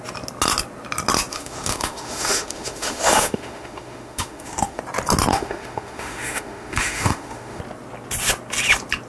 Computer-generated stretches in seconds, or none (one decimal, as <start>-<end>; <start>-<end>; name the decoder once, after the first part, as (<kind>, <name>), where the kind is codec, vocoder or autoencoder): 1.3-4.8 (autoencoder, DAC-VAE); 5.3-7.6